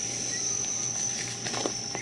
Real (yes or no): yes